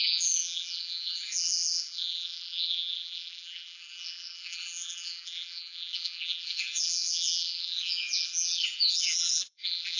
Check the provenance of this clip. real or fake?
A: fake